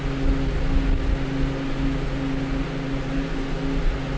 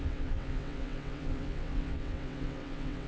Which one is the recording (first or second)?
first